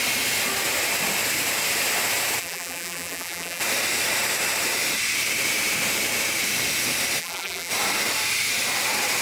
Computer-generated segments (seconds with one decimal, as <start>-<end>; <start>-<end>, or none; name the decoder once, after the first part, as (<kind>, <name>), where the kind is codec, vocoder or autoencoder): 2.4-3.6 (vocoder, BigVGAN v2); 7.2-7.7